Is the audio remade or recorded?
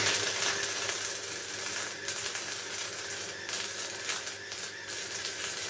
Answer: recorded